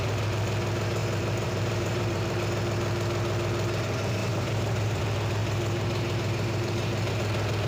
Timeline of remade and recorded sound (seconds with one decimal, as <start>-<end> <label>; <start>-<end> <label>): 0.0-1.0 recorded; 1.0-2.4 remade; 2.4-4.2 recorded; 4.2-5.0 remade; 5.0-5.4 recorded; 5.4-7.1 remade; 7.1-7.7 recorded